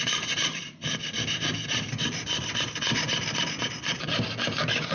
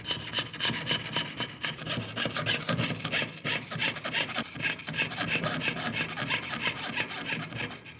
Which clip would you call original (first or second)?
second